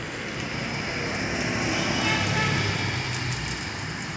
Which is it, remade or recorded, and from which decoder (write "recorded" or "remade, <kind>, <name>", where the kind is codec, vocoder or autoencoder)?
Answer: recorded